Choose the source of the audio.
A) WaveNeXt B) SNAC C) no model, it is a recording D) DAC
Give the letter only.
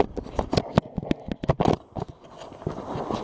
C